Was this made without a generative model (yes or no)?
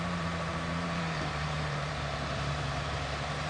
no